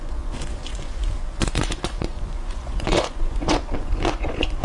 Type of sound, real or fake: fake